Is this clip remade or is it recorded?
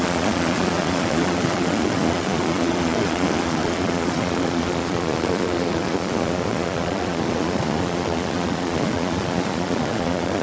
remade